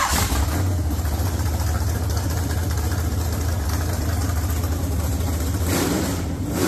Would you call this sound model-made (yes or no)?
yes